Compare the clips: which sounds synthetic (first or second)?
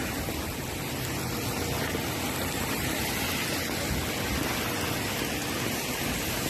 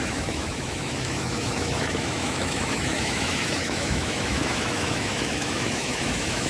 second